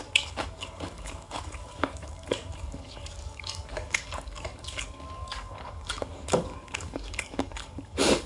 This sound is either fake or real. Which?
fake